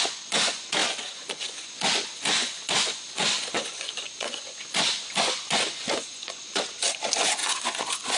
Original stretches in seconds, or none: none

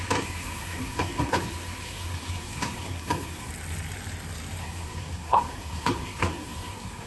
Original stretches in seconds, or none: 3.5-4.6

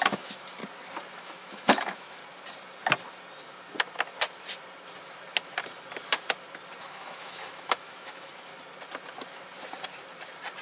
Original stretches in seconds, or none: 0.6-1.2; 2.2-6.8; 8.5-10.6

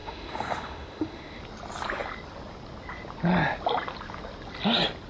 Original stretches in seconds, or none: 1.4-5.1

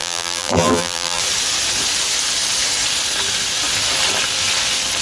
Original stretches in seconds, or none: 1.2-5.0

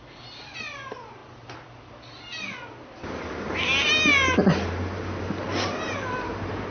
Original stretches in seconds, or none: 0.0-6.7

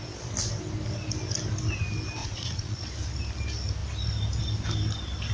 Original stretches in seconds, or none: 0.0-2.2; 2.8-5.3

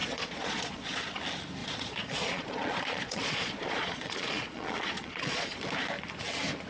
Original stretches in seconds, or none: 1.2-1.6; 5.6-6.7